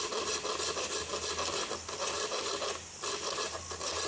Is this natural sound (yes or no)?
yes